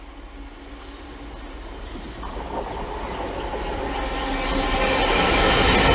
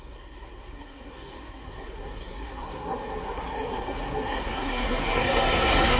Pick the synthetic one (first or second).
second